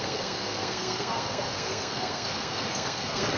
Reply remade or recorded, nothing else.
remade